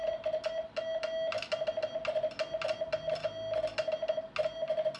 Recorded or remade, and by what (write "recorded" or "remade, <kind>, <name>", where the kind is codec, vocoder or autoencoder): recorded